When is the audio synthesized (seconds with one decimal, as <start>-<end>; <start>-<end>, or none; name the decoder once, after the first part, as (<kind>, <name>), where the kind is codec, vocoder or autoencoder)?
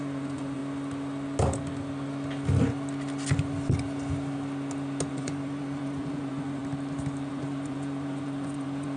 0.0-0.6 (vocoder, Vocos); 5.1-6.6; 7.3-9.0